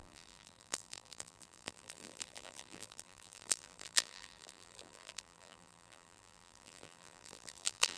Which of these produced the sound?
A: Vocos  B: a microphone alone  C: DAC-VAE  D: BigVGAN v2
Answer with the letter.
D